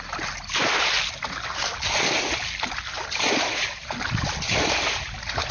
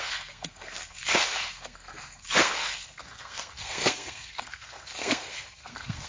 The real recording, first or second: first